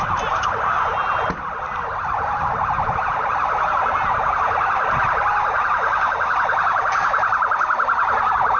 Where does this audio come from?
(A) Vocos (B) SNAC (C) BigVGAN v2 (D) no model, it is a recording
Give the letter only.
D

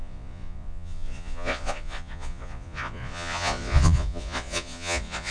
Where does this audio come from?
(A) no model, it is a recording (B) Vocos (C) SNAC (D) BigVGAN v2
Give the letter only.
B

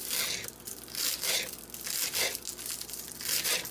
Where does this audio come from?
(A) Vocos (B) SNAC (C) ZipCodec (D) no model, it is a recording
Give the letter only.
D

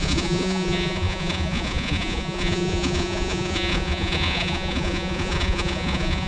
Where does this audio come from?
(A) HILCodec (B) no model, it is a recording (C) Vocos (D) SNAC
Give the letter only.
C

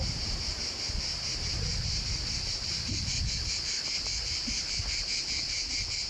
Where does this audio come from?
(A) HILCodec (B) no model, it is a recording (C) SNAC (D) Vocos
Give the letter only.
B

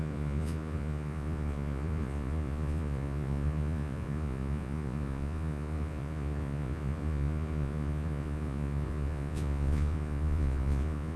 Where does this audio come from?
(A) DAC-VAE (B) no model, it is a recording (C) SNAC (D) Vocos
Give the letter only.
D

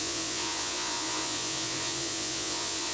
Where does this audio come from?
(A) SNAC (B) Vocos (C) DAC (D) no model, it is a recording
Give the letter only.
B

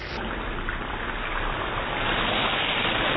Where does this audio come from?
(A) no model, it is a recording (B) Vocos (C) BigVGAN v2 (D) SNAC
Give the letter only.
A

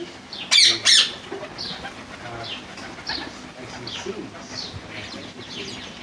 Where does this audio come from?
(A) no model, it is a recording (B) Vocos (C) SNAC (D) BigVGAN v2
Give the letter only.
A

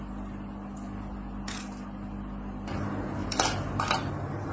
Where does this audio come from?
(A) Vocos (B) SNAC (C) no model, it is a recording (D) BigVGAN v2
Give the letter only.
C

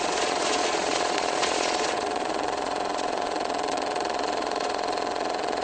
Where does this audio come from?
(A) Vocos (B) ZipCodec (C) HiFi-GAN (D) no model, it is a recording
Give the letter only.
A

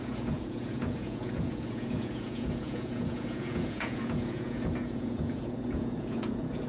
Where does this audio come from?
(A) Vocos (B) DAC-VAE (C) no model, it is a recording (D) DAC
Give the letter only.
A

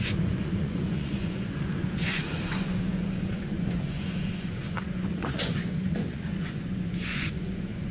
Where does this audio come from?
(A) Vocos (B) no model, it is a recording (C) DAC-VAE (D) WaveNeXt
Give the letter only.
A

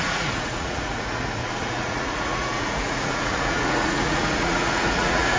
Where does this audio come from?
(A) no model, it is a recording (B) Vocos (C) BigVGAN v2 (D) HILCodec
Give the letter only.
B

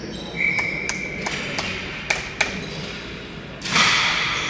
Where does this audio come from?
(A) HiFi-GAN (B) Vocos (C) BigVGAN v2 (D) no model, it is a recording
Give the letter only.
D